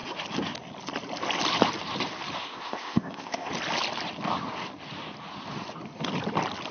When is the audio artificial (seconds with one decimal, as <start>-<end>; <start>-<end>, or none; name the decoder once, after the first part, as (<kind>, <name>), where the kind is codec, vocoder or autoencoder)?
2.4-3.5 (codec, ZipCodec)

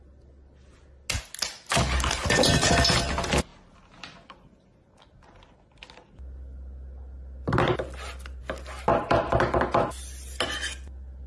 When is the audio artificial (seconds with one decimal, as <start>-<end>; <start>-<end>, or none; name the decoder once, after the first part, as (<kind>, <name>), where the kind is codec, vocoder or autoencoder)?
none